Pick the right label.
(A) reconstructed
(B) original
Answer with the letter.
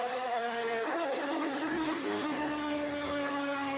A